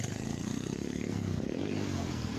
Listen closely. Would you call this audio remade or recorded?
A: remade